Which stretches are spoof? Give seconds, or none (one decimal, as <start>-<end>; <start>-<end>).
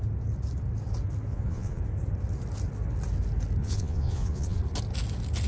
1.3-1.8; 3.6-4.6